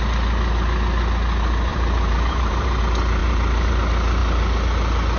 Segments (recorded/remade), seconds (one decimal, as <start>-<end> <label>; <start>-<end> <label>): 0.0-1.7 recorded; 1.7-2.8 remade; 2.8-3.2 recorded; 3.2-3.7 remade; 3.7-5.2 recorded